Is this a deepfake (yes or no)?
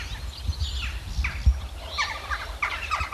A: no